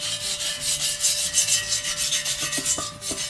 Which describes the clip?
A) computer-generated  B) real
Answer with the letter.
B